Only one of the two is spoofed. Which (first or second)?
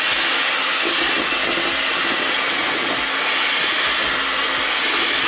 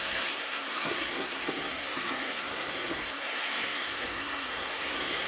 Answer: second